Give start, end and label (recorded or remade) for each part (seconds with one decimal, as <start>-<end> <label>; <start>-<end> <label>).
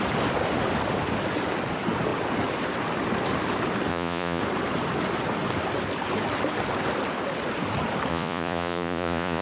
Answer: 0.0-3.9 recorded; 3.9-4.4 remade; 4.4-8.1 recorded; 8.1-9.4 remade